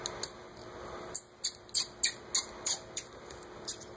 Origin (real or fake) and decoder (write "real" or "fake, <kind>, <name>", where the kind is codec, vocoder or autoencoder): real